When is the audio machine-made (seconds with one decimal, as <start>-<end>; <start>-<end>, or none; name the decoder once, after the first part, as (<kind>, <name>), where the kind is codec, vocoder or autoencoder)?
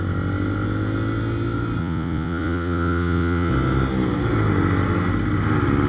1.8-3.5 (vocoder, Vocos)